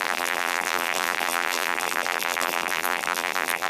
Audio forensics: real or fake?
fake